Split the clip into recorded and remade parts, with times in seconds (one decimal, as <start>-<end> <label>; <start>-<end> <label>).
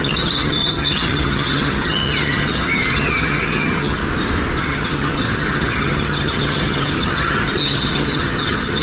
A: 0.0-4.0 remade; 4.0-4.6 recorded; 4.6-8.8 remade